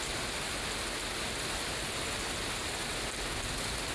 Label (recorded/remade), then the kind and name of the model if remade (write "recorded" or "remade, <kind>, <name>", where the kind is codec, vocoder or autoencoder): recorded